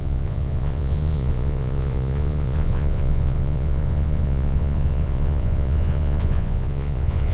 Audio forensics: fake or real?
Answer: fake